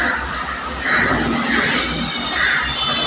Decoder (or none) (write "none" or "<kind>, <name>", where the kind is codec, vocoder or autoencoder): none